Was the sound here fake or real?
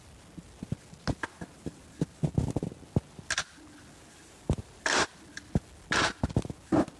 real